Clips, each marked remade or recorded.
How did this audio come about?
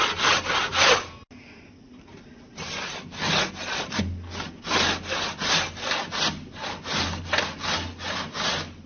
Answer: recorded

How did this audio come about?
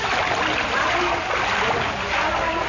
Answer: recorded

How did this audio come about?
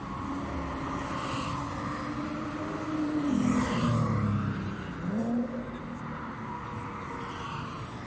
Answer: recorded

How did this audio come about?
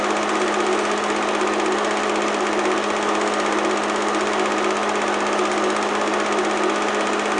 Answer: recorded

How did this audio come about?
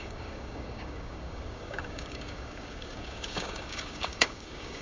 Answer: remade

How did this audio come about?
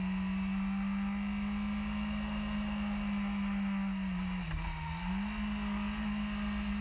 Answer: recorded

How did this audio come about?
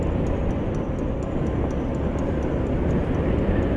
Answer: recorded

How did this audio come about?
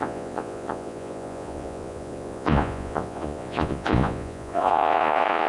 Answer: remade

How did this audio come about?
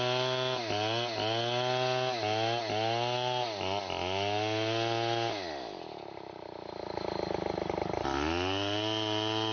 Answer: recorded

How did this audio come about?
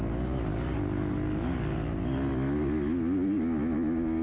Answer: recorded